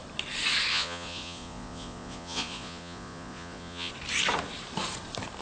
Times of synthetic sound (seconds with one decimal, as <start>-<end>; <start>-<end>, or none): 0.7-3.9